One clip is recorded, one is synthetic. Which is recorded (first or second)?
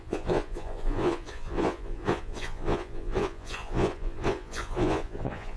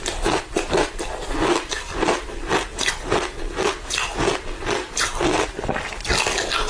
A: second